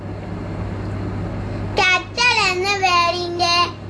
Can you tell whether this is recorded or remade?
recorded